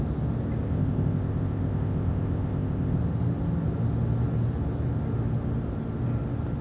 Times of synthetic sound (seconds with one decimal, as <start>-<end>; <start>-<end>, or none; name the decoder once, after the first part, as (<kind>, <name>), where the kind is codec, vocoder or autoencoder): 0.6-3.0 (codec, ZipCodec)